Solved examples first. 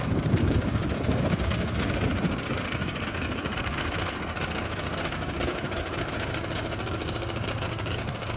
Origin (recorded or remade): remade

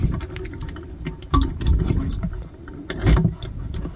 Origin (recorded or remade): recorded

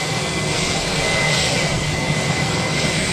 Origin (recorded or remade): remade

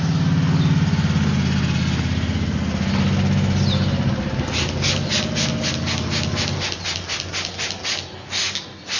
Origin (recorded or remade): recorded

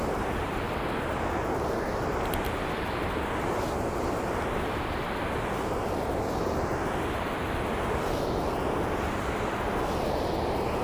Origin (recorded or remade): recorded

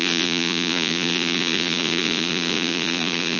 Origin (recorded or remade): remade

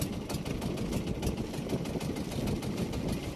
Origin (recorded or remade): recorded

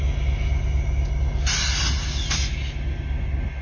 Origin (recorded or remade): recorded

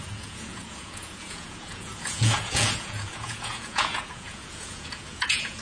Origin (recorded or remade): remade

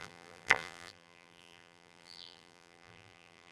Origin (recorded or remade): remade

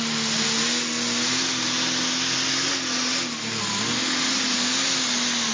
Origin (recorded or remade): recorded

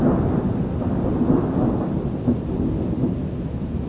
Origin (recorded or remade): recorded